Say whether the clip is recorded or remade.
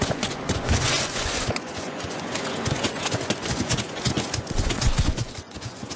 remade